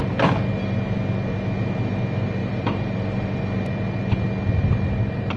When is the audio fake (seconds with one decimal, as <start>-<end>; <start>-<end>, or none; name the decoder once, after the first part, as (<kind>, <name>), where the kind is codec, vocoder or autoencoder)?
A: 2.4-3.4 (vocoder, BigVGAN v2)